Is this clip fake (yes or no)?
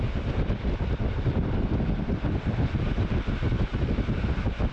no